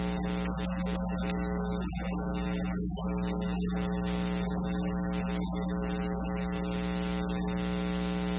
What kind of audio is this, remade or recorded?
recorded